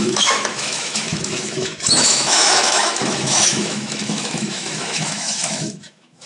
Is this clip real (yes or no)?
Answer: no